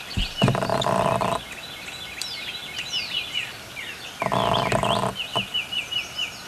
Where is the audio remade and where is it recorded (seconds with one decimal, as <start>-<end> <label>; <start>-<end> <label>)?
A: 0.0-6.5 recorded